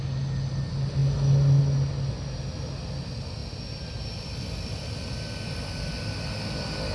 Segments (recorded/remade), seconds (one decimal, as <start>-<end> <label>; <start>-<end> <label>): 0.0-6.9 recorded

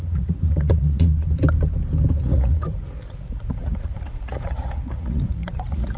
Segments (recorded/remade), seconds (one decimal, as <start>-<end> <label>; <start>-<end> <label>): 0.0-1.1 remade; 1.1-2.2 recorded; 2.2-6.0 remade

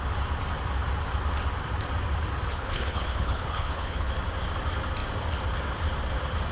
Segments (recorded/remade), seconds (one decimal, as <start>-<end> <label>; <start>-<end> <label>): 0.0-2.5 recorded; 2.5-4.1 remade; 4.1-6.5 recorded

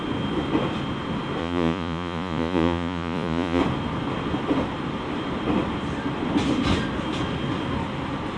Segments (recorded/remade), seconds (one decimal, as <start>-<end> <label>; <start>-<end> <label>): 0.0-1.4 recorded; 1.4-3.6 remade; 3.6-8.4 recorded

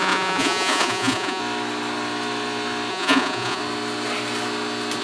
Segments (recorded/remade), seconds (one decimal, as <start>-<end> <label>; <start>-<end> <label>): 0.0-1.4 remade; 1.4-2.9 recorded; 2.9-3.6 remade; 3.6-5.0 recorded

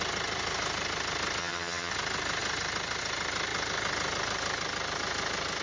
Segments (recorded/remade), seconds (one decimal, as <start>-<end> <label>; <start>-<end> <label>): 0.0-1.4 recorded; 1.4-1.9 remade; 1.9-5.6 recorded

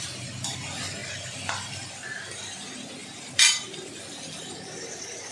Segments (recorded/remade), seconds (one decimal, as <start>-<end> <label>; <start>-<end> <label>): 0.0-5.3 recorded

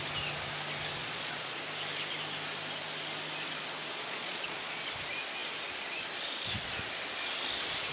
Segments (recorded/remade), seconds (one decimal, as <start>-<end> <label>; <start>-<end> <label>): 0.0-1.0 recorded; 1.0-1.6 remade; 1.6-3.9 recorded; 3.9-4.8 remade; 4.8-7.9 recorded